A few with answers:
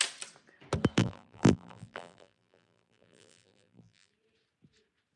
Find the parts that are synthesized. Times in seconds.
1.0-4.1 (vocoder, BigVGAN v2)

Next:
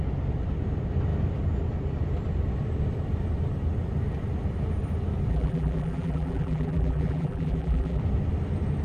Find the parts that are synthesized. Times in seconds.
5.3-8.0 (vocoder, BigVGAN v2)

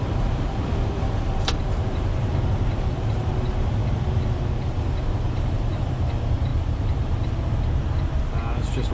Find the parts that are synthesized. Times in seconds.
0.0-8.9 (vocoder, BigVGAN v2)

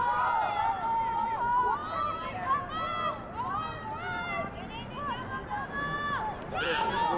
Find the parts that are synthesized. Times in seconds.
none

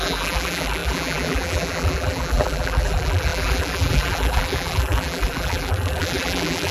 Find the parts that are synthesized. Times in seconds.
0.0-6.7 (vocoder, BigVGAN v2)

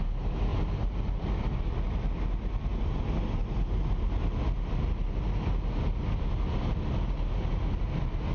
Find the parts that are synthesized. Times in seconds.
none

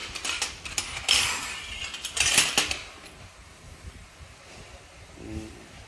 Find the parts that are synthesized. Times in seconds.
none

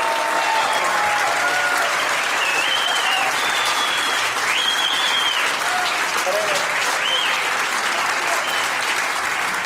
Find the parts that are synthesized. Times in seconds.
2.5-6.0 (vocoder, BigVGAN v2); 7.2-8.5